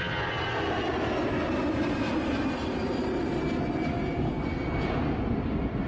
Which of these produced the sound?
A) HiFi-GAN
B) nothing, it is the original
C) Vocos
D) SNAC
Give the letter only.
B